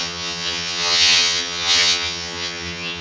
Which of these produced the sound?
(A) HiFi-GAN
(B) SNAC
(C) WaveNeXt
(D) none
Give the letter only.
A